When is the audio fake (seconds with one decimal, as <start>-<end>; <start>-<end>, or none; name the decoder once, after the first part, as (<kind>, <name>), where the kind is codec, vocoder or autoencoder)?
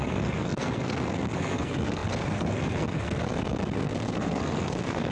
0.0-5.1 (codec, SNAC)